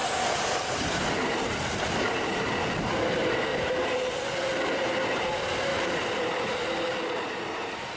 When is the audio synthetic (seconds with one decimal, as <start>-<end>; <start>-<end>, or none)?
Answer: 0.0-2.6; 3.5-5.1; 5.7-6.4